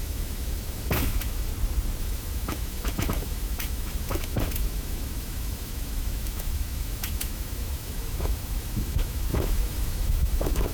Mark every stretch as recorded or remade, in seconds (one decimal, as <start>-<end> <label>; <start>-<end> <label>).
0.0-1.5 remade; 1.5-2.0 recorded; 2.0-10.7 remade